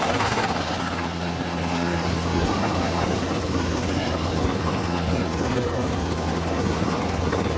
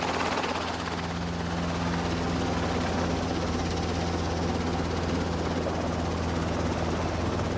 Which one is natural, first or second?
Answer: second